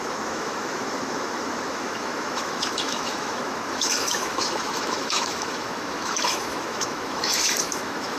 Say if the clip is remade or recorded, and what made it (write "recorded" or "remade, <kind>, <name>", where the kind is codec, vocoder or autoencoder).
remade, autoencoder, DAC-VAE